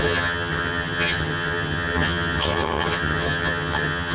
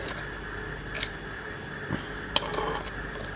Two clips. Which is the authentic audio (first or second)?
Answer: second